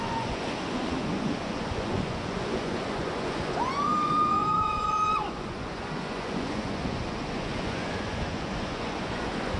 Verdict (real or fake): fake